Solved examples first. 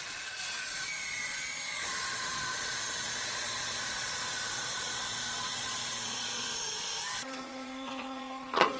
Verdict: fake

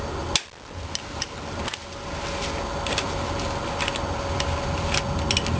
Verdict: real